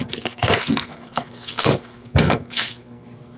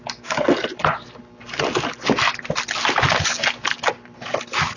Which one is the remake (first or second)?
first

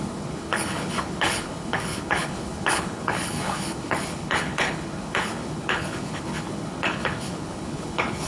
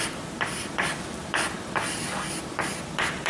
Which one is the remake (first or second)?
first